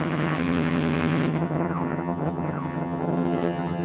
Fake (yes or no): yes